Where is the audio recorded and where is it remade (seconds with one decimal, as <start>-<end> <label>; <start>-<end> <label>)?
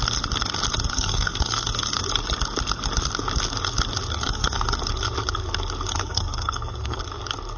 0.0-0.9 recorded; 0.9-2.0 remade; 2.0-4.1 recorded; 4.1-4.8 remade; 4.8-5.9 recorded; 5.9-7.0 remade; 7.0-7.6 recorded